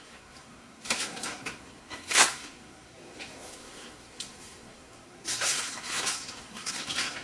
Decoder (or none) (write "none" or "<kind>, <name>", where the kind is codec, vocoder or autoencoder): codec, SNAC